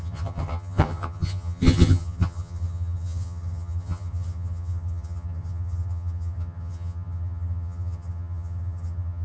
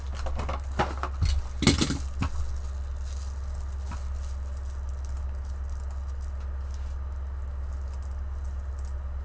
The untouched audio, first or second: second